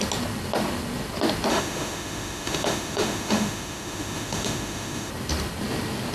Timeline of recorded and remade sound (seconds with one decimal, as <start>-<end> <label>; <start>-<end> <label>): 0.0-1.5 recorded; 1.5-5.1 remade; 5.1-6.1 recorded